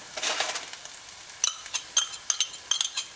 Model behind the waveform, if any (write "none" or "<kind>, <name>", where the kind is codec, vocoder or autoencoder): none